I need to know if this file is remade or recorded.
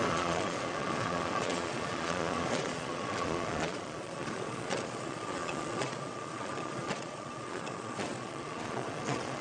remade